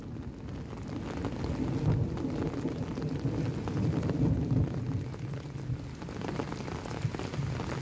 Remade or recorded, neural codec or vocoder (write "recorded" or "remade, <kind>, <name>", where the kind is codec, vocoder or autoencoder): recorded